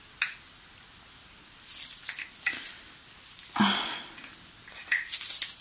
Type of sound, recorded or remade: recorded